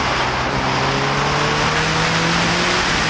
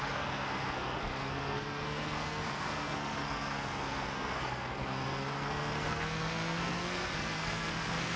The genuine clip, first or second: first